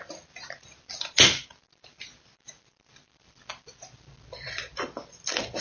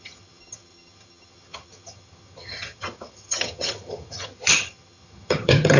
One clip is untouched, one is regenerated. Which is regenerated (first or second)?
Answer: second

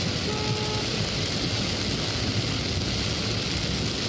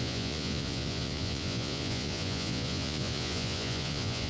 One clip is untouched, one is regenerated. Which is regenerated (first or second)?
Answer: second